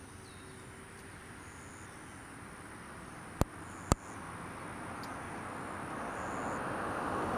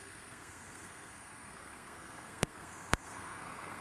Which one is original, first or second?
first